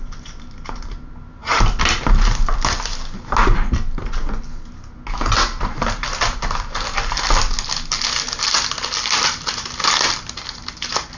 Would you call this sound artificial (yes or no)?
no